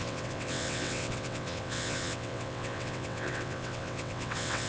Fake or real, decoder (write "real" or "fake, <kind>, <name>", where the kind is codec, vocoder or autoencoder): fake, vocoder, WaveNeXt